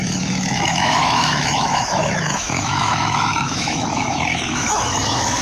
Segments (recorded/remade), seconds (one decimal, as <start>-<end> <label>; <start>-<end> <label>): 0.0-5.4 remade